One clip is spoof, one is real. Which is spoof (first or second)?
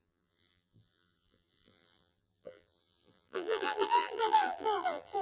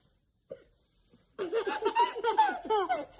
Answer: first